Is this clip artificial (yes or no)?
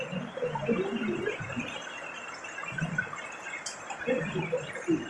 no